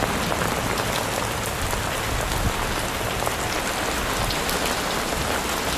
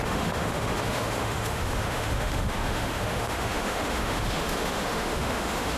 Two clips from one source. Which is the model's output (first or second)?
second